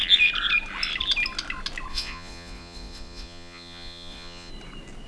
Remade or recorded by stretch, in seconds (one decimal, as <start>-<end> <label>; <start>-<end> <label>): 0.0-1.9 recorded; 1.9-4.5 remade; 4.5-5.1 recorded